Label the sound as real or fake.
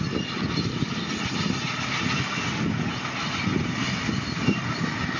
real